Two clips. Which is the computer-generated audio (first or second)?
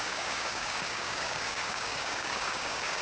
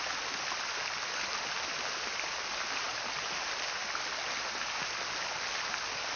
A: first